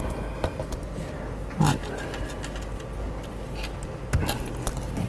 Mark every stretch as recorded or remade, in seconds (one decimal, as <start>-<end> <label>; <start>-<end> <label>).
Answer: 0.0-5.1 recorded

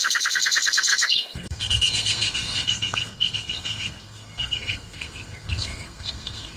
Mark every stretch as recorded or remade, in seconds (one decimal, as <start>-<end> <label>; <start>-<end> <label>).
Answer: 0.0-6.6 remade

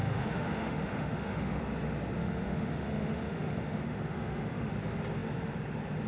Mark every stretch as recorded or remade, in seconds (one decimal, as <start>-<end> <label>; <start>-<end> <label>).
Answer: 0.0-1.6 remade; 1.6-2.2 recorded; 2.2-4.7 remade; 4.7-6.1 recorded

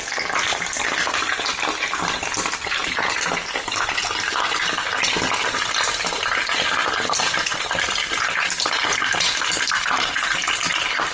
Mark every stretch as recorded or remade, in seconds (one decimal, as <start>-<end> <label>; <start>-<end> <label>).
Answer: 0.0-2.8 recorded; 2.8-3.5 remade; 3.5-11.1 recorded

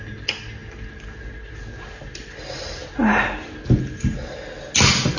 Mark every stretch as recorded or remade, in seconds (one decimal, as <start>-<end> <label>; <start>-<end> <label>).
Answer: 0.0-5.2 recorded